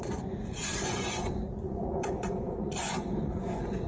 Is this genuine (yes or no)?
no